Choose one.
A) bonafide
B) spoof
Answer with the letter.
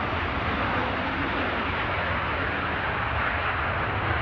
A